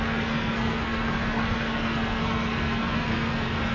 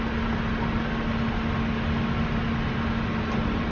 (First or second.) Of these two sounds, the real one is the second